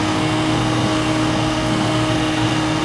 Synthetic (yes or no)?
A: yes